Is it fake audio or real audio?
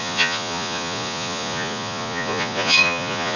fake